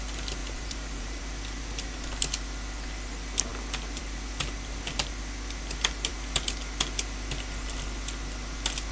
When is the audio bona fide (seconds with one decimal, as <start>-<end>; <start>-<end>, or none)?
0.0-0.4; 1.2-8.9

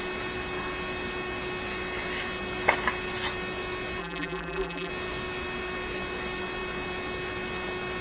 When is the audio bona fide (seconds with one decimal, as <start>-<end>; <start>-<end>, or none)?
0.0-4.0; 4.9-8.0

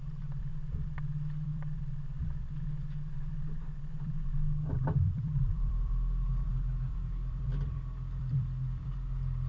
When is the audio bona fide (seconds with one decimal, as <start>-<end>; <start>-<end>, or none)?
none

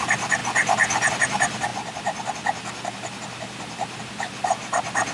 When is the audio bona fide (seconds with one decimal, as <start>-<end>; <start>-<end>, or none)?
0.0-5.1

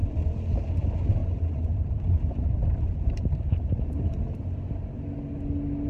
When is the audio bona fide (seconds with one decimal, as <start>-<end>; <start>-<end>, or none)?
0.7-1.2; 4.7-5.9

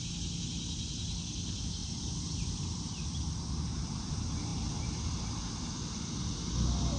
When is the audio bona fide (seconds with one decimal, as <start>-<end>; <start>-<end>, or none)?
0.0-1.8; 4.1-4.5; 6.2-7.0

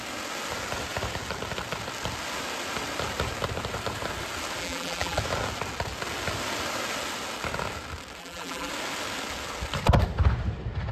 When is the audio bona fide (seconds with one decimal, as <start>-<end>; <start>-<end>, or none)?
0.0-4.6; 5.2-8.2; 8.7-10.9

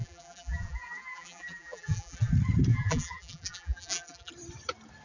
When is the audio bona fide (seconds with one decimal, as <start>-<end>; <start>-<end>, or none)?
2.3-2.7; 4.3-5.0